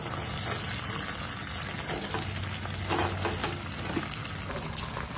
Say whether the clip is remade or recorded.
recorded